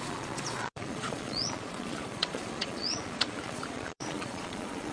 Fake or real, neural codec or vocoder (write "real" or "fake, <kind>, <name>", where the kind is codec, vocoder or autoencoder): fake, vocoder, Vocos